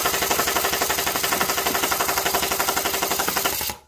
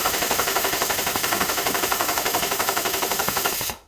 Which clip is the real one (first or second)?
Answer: first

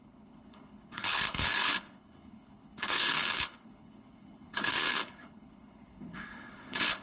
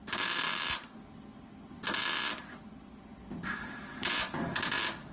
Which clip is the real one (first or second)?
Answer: second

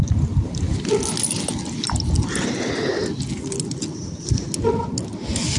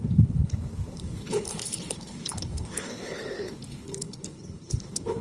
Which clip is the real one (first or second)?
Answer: first